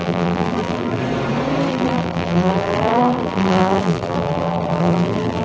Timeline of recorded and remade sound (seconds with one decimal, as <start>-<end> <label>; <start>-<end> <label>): 0.0-1.0 remade; 1.0-1.7 recorded; 1.7-5.4 remade